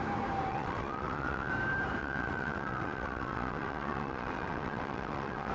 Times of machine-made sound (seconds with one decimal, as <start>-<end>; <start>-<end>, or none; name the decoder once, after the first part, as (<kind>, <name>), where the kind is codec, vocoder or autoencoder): 0.5-1.5 (vocoder, WaveNeXt); 2.0-5.5